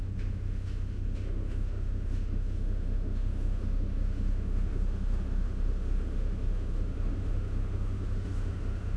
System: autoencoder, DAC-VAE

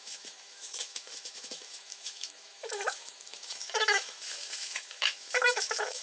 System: autoencoder, DAC-VAE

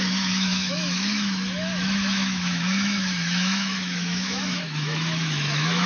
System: autoencoder, DAC-VAE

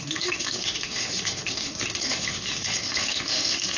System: autoencoder, DAC-VAE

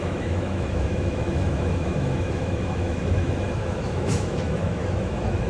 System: autoencoder, DAC-VAE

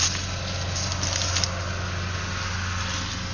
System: none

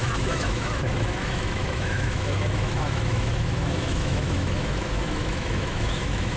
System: autoencoder, DAC-VAE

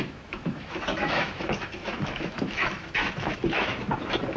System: autoencoder, DAC-VAE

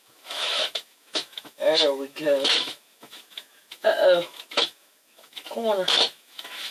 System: autoencoder, DAC-VAE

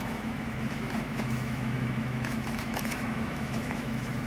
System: autoencoder, DAC-VAE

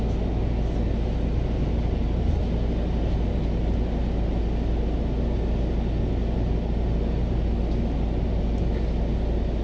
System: none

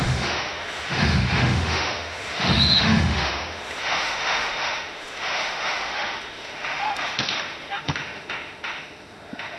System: autoencoder, DAC-VAE